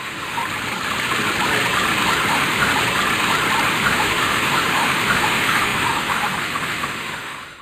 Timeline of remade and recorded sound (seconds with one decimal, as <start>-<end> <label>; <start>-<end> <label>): 0.0-0.4 remade; 0.4-2.3 recorded; 2.3-2.7 remade; 2.7-3.7 recorded; 3.7-7.6 remade